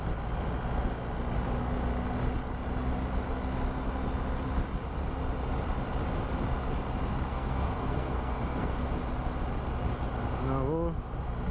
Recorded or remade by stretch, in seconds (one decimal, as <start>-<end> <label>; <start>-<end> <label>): 0.0-7.3 recorded; 7.3-8.9 remade; 8.9-11.5 recorded